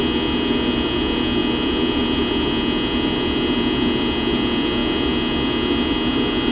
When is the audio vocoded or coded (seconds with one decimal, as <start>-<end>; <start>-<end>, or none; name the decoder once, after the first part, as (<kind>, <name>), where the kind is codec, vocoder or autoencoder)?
none